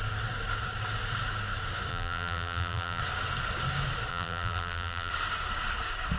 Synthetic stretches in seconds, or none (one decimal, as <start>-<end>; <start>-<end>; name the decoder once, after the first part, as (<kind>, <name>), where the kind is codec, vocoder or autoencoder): 1.9-3.0 (vocoder, BigVGAN v2); 4.1-5.1